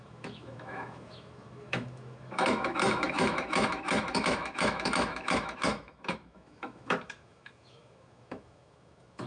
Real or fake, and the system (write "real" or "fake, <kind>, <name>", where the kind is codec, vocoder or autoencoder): fake, autoencoder, DAC-VAE